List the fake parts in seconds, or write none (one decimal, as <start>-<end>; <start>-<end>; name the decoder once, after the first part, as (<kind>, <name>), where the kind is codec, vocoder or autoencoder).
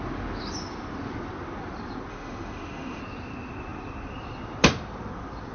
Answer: 2.1-3.0 (autoencoder, DAC-VAE)